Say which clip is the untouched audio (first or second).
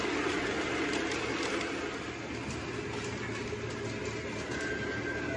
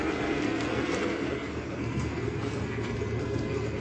first